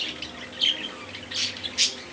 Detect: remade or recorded recorded